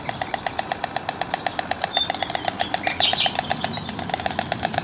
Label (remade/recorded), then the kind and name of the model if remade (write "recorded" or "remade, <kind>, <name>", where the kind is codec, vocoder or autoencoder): recorded